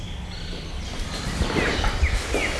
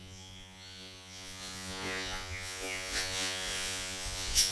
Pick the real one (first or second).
first